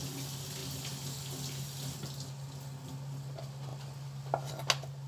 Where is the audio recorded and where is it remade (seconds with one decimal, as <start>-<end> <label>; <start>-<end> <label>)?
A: 0.0-5.1 recorded

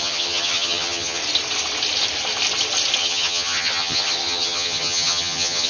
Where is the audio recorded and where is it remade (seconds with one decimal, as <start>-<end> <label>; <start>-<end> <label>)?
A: 0.0-1.2 remade; 1.2-3.0 recorded; 3.0-5.7 remade

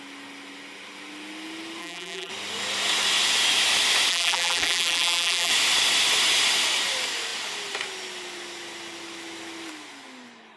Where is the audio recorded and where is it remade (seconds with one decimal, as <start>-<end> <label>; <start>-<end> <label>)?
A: 0.0-1.8 recorded; 1.8-2.3 remade; 2.3-4.1 recorded; 4.1-5.5 remade; 5.5-10.6 recorded

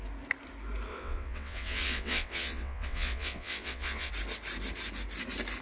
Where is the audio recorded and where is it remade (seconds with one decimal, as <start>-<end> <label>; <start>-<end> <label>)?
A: 0.0-0.9 recorded; 0.9-4.1 remade; 4.1-5.6 recorded

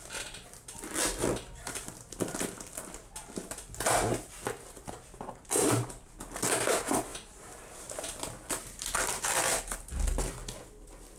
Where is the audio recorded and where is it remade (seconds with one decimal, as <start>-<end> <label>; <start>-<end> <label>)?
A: 0.0-11.2 recorded

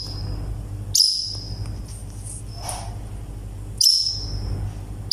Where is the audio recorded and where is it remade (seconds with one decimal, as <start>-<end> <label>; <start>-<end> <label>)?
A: 0.0-5.1 recorded

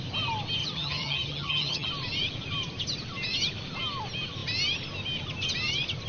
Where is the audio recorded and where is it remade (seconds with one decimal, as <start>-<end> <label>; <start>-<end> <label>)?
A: 0.0-0.6 recorded; 0.6-1.9 remade; 1.9-6.1 recorded